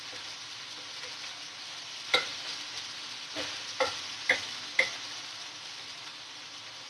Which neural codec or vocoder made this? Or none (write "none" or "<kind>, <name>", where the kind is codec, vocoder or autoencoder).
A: none